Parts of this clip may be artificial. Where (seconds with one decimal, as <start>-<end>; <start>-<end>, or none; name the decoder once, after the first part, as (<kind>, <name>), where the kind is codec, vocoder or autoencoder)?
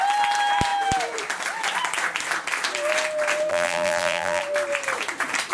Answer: 3.5-4.4 (vocoder, BigVGAN v2)